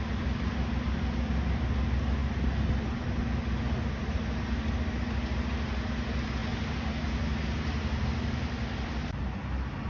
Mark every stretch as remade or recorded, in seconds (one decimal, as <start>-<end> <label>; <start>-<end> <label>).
0.0-9.9 recorded